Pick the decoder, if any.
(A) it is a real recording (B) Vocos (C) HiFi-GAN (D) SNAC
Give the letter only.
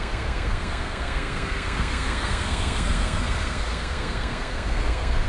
D